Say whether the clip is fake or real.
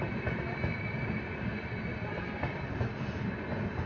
real